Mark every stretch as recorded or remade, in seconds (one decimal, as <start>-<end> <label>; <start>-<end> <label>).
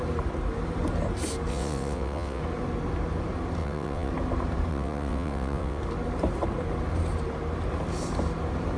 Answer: 0.0-1.5 recorded; 1.5-2.4 remade; 2.4-3.6 recorded; 3.6-4.1 remade; 4.1-4.7 recorded; 4.7-5.8 remade; 5.8-8.8 recorded